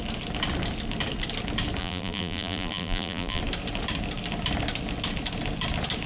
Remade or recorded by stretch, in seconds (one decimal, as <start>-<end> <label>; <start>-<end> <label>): 0.0-1.8 recorded; 1.8-3.4 remade; 3.4-6.1 recorded